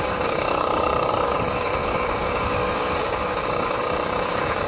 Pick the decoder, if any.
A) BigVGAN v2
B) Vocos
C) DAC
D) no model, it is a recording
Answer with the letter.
C